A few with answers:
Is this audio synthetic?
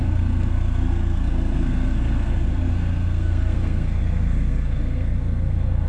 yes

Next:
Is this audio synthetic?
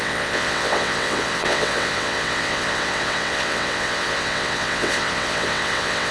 yes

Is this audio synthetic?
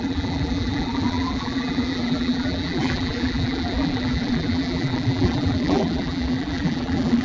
yes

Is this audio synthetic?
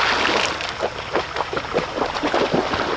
no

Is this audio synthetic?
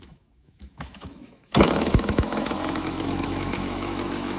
yes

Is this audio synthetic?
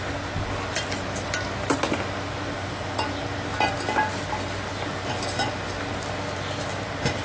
no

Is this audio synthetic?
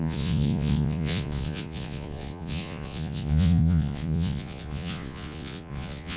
yes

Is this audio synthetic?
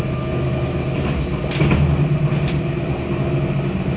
no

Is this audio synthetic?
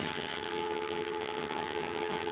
yes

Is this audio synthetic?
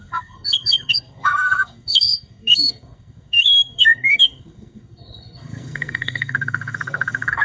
yes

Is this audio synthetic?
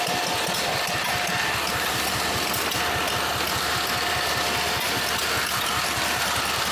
no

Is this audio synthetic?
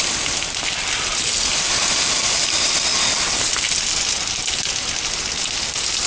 no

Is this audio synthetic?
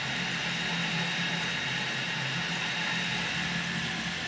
no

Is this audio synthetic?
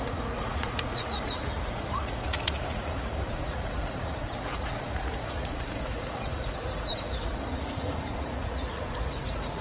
yes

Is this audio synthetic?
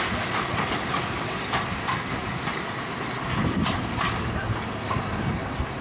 no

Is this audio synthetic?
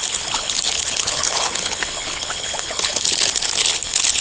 yes